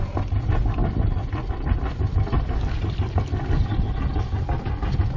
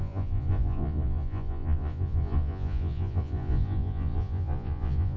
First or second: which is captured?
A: first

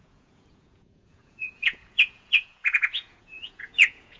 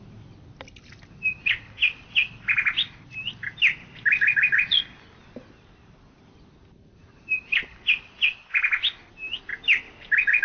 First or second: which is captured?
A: second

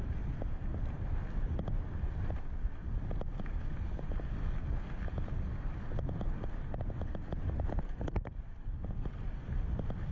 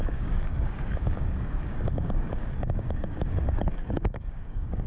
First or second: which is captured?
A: first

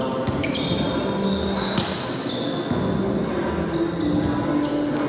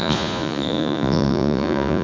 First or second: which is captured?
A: first